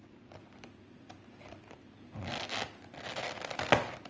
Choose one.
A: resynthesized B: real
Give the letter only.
B